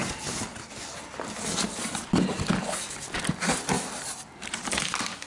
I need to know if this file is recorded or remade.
recorded